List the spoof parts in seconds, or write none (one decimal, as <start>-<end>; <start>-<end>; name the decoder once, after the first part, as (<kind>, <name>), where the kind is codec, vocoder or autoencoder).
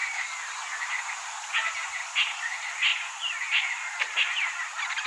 none